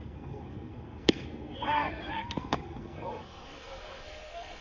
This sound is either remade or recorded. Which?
remade